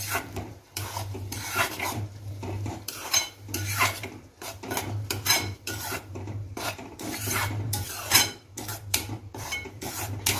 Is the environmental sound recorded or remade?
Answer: remade